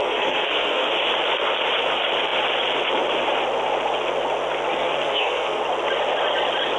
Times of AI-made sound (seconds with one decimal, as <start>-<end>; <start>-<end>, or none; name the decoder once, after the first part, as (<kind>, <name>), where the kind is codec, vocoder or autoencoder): 0.0-0.9 (codec, SNAC); 4.7-5.6

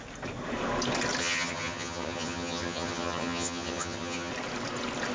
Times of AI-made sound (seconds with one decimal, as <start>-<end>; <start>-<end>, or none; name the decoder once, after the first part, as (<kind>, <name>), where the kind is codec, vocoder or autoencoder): 1.2-4.3 (vocoder, HiFi-GAN)

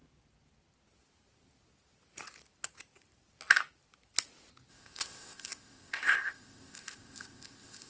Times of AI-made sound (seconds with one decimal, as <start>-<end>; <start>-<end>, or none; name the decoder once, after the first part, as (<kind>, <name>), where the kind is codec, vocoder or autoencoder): 4.7-7.9 (codec, ZipCodec)

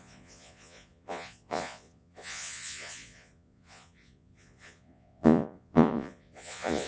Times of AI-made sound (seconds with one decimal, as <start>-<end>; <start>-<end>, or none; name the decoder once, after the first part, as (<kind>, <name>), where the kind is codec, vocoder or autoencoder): 0.0-6.9 (vocoder, Vocos)

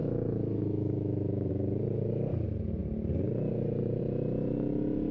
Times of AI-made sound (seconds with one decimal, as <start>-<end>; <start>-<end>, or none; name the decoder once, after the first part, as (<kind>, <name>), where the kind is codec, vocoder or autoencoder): 0.0-1.5 (autoencoder, DAC-VAE)

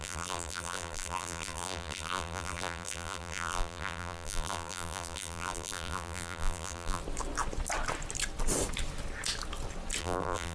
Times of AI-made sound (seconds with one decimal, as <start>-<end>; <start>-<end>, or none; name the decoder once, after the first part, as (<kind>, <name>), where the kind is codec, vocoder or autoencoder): 0.0-7.0 (vocoder, BigVGAN v2); 10.0-10.5